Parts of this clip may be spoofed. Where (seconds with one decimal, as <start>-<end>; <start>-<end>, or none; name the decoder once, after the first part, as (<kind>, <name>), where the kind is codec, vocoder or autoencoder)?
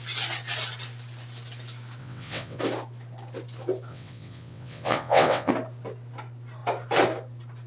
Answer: 2.0-2.6 (vocoder, WaveNeXt); 3.9-5.5